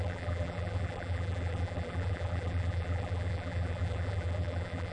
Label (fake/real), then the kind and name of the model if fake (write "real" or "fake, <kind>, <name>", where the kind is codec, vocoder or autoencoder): fake, vocoder, BigVGAN v2